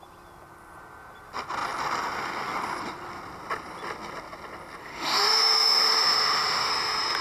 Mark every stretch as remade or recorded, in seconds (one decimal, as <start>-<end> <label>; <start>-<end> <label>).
0.0-4.8 recorded; 4.8-6.7 remade; 6.7-7.2 recorded